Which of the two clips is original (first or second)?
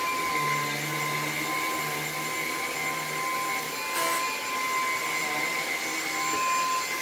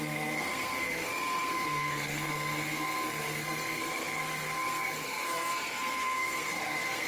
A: first